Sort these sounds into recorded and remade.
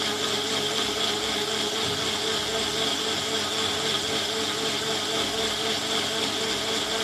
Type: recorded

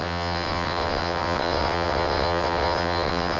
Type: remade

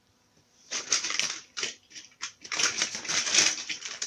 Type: remade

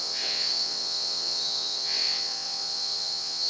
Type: remade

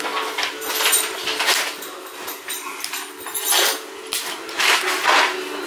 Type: recorded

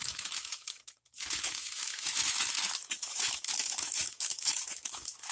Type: remade